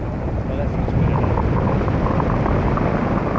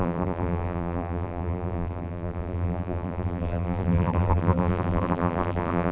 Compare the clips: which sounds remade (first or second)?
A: second